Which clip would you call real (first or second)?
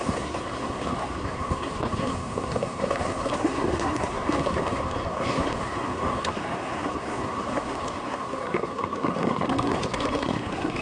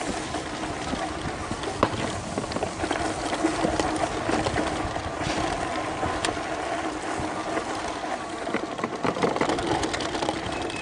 second